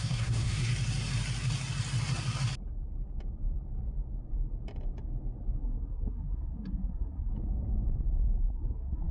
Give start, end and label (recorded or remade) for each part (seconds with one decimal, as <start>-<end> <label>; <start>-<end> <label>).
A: 0.0-0.7 remade; 0.7-5.6 recorded; 5.6-7.3 remade; 7.3-8.4 recorded; 8.4-9.1 remade